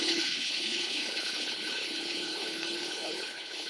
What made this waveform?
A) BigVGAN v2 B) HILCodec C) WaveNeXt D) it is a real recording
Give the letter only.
B